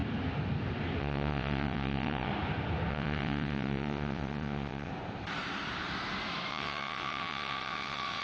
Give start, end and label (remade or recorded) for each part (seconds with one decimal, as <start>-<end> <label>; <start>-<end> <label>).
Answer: 0.0-1.0 recorded; 1.0-2.3 remade; 2.3-2.9 recorded; 2.9-4.9 remade; 4.9-6.5 recorded; 6.5-8.2 remade